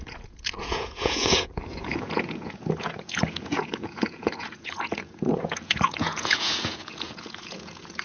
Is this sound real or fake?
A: fake